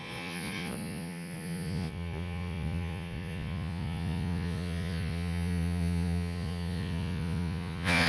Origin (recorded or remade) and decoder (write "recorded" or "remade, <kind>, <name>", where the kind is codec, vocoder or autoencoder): remade, vocoder, Vocos